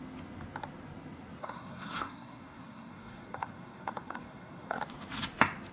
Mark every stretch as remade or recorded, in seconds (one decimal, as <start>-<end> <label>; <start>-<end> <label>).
0.0-1.4 recorded; 1.4-4.8 remade; 4.8-5.7 recorded